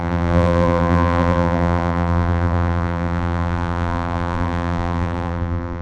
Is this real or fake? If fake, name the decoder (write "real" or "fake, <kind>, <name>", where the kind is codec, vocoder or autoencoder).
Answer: fake, vocoder, BigVGAN v2